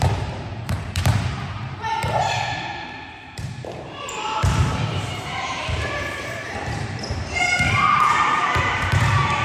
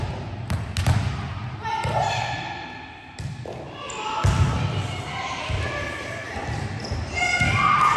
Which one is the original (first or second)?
second